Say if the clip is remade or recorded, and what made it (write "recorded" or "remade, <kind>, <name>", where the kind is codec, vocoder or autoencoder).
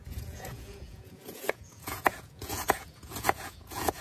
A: remade, vocoder, Vocos